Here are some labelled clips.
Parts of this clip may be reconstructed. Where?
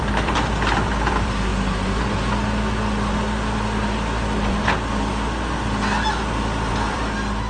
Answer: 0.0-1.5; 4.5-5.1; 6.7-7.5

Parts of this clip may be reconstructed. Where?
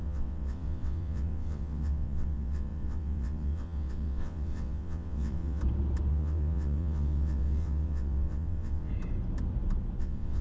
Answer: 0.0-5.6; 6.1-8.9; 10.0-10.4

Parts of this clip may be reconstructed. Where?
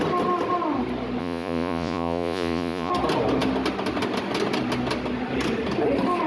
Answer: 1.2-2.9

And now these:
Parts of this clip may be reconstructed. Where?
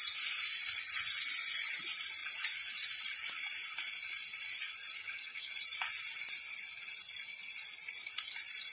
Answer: 5.0-5.5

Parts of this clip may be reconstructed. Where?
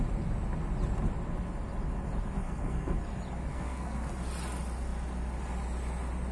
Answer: 2.4-3.0; 3.5-4.1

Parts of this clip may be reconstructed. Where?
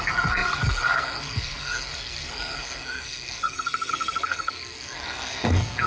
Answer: 0.0-5.9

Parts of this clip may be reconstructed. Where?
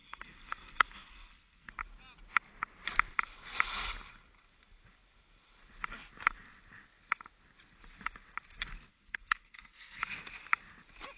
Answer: 0.0-1.7; 8.9-10.0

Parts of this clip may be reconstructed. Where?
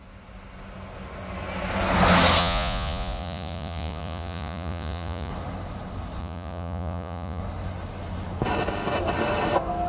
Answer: 2.4-5.3; 6.2-7.4